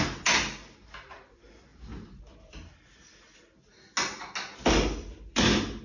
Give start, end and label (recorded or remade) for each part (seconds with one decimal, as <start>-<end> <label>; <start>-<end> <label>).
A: 0.0-5.8 recorded